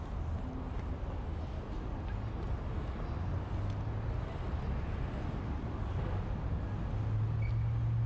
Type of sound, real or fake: real